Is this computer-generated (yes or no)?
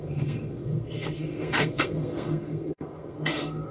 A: yes